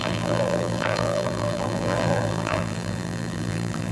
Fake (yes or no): yes